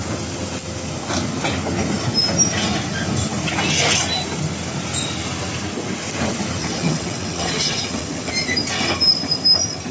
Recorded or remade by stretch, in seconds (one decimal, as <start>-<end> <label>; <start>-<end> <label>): 0.0-6.6 recorded; 6.6-8.3 remade; 8.3-9.9 recorded